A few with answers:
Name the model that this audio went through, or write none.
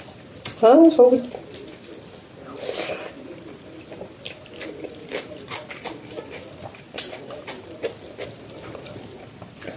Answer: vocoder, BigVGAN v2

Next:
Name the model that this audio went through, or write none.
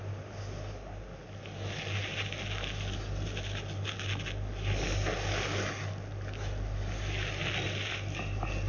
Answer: none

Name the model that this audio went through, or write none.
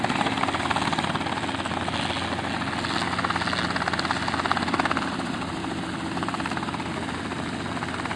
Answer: none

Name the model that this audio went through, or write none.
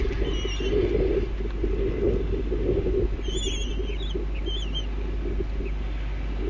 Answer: none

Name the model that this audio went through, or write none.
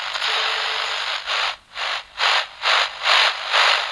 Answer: none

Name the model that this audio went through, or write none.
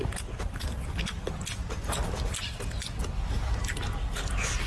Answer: none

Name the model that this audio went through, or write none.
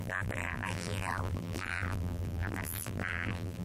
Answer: vocoder, BigVGAN v2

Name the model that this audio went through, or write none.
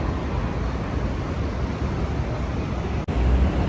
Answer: none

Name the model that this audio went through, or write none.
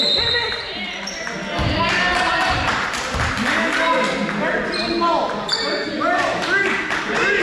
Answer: none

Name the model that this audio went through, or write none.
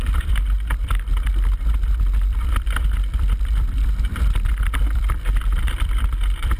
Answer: vocoder, BigVGAN v2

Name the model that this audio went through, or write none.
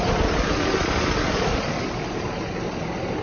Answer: none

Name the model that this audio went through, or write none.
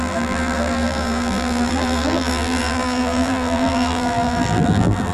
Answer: vocoder, BigVGAN v2